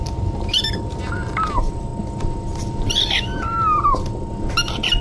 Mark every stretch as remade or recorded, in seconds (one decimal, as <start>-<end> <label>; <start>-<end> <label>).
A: 0.0-1.9 remade; 1.9-5.0 recorded